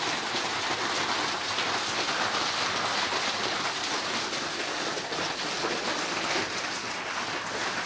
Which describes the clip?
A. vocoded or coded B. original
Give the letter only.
B